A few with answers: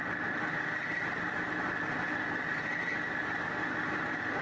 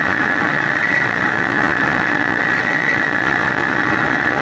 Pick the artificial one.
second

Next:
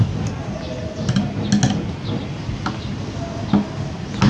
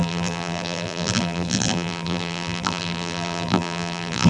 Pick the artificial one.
second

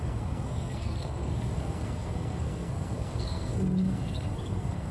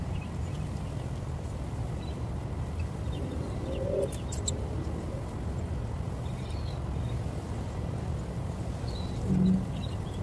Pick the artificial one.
first